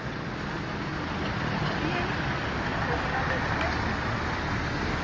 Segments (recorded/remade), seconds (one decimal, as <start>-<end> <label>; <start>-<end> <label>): 0.0-2.7 recorded; 2.7-3.4 remade; 3.4-5.0 recorded